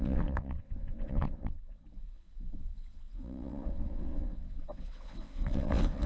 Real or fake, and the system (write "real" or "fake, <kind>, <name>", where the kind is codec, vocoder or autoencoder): fake, vocoder, WaveNeXt